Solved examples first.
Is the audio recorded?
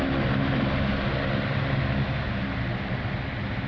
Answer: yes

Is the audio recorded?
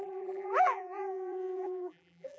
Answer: no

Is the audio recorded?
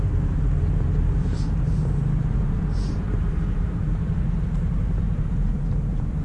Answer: no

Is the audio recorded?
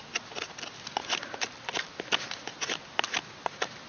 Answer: no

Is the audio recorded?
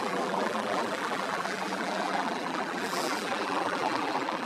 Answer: no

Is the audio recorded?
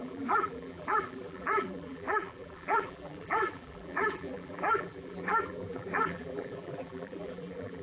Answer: no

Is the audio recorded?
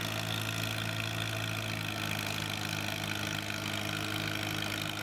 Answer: yes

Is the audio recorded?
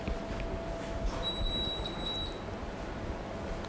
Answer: yes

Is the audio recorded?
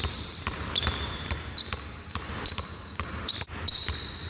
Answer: no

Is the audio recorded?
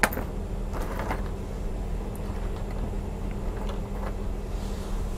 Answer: yes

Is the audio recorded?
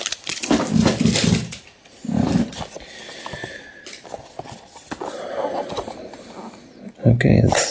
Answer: no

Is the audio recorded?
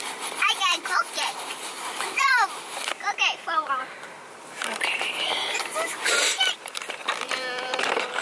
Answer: no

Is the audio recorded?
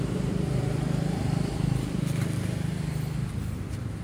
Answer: no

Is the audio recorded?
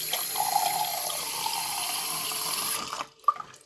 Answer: no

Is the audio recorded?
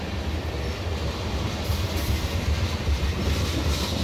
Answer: yes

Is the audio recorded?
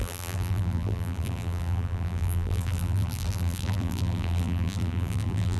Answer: no